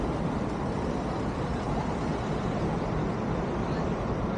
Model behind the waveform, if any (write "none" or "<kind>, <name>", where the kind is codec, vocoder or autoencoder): vocoder, BigVGAN v2